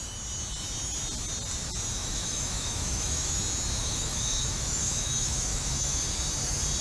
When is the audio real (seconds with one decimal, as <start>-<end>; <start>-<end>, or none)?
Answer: 0.0-2.0; 3.4-3.8; 6.0-6.8